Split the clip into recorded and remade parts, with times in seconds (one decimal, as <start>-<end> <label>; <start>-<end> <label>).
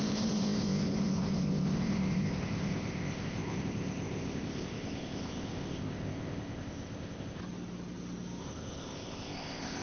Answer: 0.0-7.4 remade; 7.4-8.4 recorded; 8.4-9.8 remade